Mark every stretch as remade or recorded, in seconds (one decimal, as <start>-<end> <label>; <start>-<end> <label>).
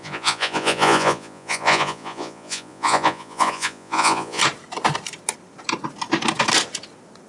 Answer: 0.0-4.4 remade; 4.4-7.3 recorded